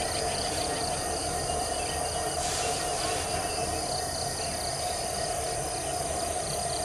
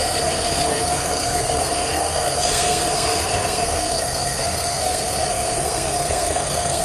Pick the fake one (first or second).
second